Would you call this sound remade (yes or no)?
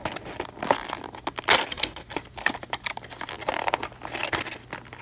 no